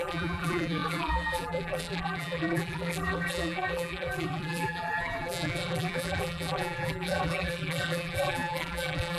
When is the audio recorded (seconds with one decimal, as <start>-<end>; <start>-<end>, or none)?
none